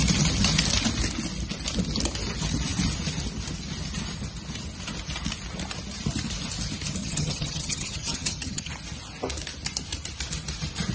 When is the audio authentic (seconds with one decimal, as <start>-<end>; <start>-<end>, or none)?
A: 0.0-7.0; 8.7-10.9